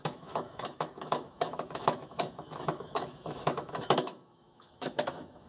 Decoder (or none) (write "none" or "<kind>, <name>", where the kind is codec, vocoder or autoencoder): autoencoder, DAC-VAE